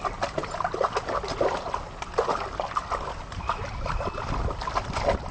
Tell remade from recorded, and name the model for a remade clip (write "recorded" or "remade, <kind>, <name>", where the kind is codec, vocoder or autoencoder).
recorded